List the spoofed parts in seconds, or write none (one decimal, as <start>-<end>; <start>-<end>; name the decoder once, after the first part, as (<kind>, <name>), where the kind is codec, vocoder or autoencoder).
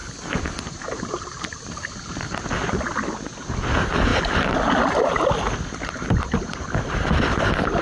0.0-2.5 (vocoder, BigVGAN v2)